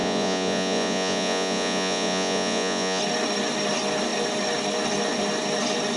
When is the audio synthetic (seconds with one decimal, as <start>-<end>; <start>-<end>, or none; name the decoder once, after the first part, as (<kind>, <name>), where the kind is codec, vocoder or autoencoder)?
0.0-3.0 (vocoder, Vocos)